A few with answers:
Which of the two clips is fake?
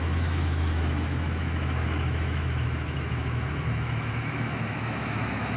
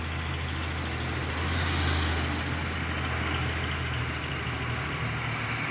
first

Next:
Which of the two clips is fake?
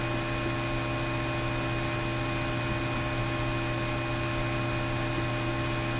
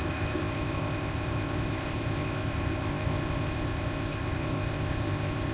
second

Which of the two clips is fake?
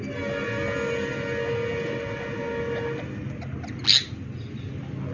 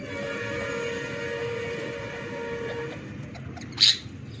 second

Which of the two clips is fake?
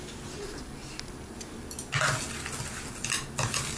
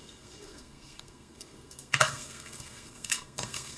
second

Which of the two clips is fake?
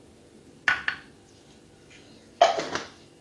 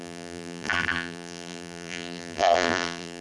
second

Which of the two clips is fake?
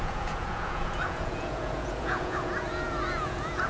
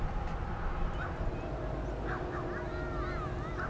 first